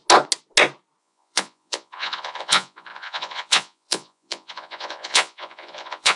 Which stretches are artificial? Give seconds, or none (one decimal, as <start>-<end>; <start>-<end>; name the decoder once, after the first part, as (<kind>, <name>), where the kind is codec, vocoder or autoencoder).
1.0-6.2 (vocoder, Vocos)